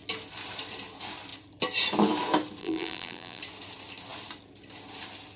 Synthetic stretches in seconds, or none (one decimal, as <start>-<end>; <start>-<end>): 2.6-3.4

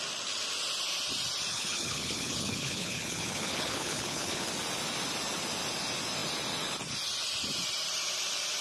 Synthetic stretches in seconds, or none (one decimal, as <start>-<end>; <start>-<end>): 1.5-4.5